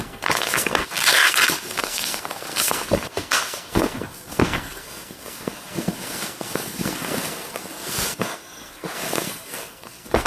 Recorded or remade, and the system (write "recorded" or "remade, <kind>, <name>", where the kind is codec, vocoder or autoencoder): remade, codec, SNAC